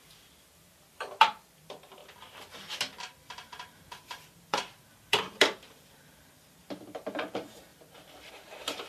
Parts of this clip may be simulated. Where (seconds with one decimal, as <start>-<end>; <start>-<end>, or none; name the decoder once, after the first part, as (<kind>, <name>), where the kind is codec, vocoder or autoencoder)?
0.0-2.0 (vocoder, BigVGAN v2); 3.0-7.7; 8.3-8.9